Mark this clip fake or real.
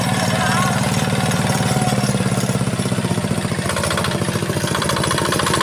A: fake